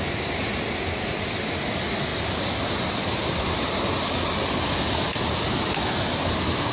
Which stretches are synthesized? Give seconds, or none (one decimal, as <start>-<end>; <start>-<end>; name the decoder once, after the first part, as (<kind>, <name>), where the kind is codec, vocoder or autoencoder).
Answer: none